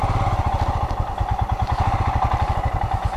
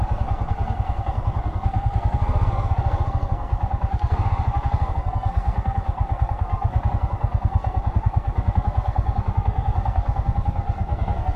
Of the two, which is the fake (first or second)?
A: second